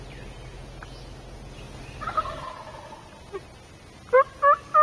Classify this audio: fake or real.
real